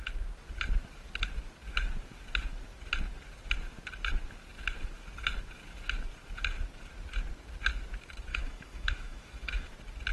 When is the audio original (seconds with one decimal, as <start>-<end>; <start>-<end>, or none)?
0.0-8.3; 9.7-10.1